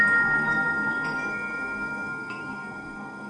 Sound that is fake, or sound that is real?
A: fake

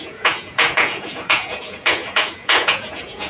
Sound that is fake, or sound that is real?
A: fake